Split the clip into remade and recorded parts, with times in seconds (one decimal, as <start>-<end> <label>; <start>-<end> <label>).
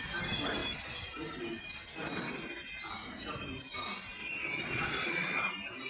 0.0-4.2 recorded; 4.2-5.5 remade; 5.5-5.9 recorded